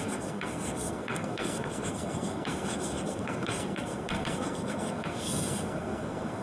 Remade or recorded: remade